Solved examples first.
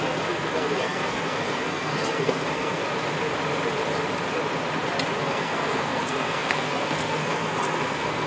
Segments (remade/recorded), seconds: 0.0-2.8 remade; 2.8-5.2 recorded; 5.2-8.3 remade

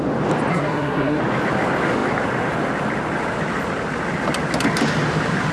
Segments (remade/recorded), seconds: 0.0-0.5 recorded; 0.5-1.2 remade; 1.2-5.5 recorded

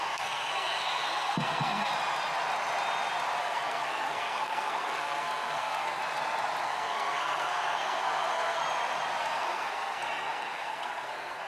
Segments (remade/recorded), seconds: 0.0-1.9 remade; 1.9-3.4 recorded; 3.4-6.0 remade; 6.0-6.6 recorded; 6.6-8.6 remade; 8.6-9.2 recorded; 9.2-11.5 remade

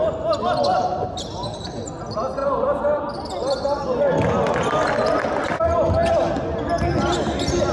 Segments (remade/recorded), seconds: 0.0-7.7 recorded

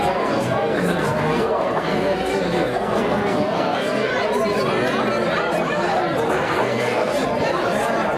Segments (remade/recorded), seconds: 0.0-4.1 remade; 4.1-6.3 recorded; 6.3-7.1 remade; 7.1-8.2 recorded

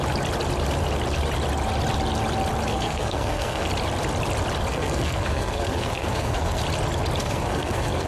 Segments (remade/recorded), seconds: 0.0-2.7 recorded; 2.7-3.7 remade; 3.7-4.7 recorded; 4.7-6.6 remade; 6.6-7.2 recorded; 7.2-8.1 remade

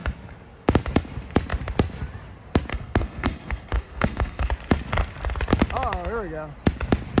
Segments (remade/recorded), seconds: 0.0-2.7 recorded; 2.7-4.5 remade; 4.5-7.2 recorded